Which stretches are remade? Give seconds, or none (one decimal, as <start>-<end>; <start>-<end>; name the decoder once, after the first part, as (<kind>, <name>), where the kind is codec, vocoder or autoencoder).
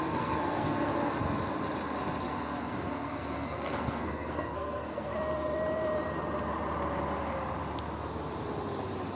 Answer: 0.0-0.9 (codec, SNAC); 2.2-5.1